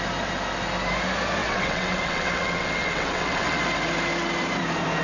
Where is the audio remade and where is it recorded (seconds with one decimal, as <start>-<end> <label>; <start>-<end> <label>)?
0.0-1.4 recorded; 1.4-3.6 remade; 3.6-5.0 recorded